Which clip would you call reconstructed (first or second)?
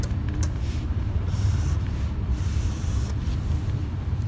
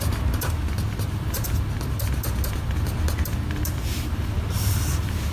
first